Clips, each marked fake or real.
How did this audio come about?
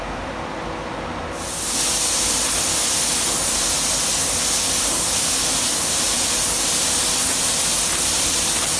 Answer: real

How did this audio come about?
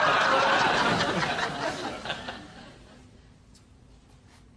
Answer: real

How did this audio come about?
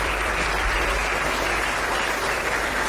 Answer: fake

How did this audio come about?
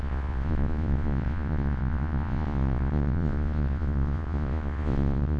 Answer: fake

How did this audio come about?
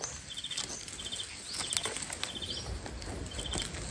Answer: real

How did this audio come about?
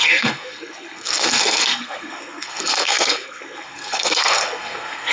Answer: fake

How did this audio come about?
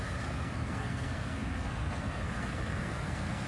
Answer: fake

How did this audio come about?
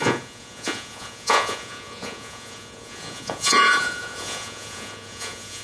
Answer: fake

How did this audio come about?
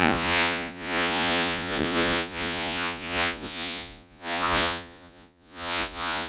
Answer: fake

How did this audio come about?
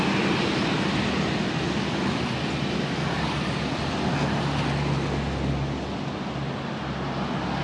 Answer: real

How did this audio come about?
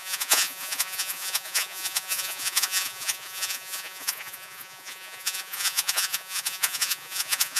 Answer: fake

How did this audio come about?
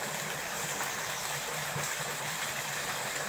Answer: real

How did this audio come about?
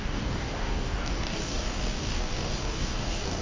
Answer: fake